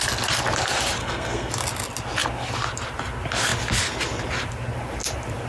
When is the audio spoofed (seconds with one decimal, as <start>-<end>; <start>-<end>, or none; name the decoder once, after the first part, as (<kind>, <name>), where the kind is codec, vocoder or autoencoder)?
1.0-1.5 (codec, SNAC)